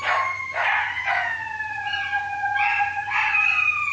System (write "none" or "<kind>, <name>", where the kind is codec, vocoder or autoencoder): vocoder, Vocos